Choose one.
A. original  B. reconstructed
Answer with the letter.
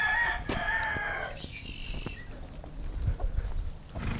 A